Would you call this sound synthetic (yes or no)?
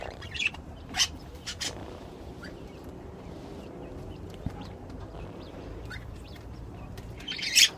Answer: yes